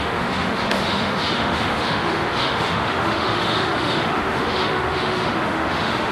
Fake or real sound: fake